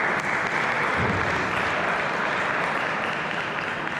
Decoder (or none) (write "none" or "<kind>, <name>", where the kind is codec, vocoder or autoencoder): none